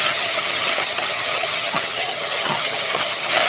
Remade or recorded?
remade